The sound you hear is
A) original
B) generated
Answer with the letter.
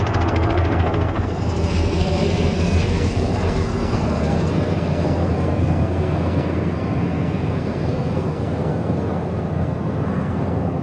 B